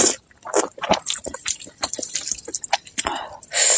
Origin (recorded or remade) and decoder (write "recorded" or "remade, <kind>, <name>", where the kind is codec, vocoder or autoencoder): recorded